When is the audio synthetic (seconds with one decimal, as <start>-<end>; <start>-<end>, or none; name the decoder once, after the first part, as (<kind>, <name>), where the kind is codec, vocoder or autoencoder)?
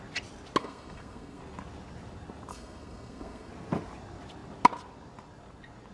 0.6-1.4 (codec, SNAC); 2.5-3.5